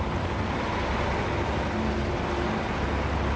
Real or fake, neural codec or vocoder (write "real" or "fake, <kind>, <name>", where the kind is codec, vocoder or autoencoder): real